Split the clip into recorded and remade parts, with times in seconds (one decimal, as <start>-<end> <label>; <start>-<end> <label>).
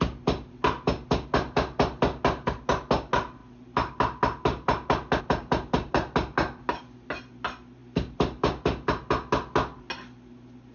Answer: 0.0-10.7 recorded